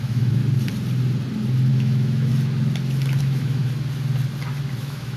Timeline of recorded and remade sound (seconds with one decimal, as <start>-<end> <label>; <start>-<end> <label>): 0.0-0.4 remade; 0.4-1.7 recorded; 1.7-2.3 remade; 2.3-3.2 recorded; 3.2-3.6 remade; 3.6-4.8 recorded; 4.8-5.2 remade